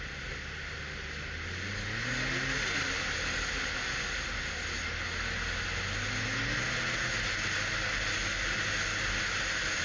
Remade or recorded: recorded